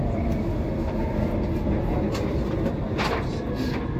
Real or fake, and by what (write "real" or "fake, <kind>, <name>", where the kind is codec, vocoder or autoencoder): real